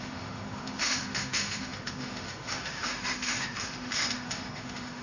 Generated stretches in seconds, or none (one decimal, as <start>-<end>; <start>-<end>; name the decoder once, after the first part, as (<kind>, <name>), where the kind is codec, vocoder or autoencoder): 0.0-5.0 (autoencoder, DAC-VAE)